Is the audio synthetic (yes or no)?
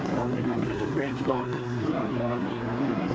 yes